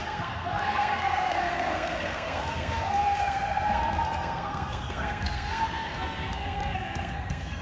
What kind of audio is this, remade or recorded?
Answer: remade